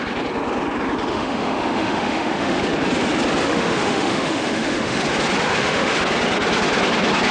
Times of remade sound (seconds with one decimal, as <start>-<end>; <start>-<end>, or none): 1.1-2.6; 3.4-5.0; 5.5-6.0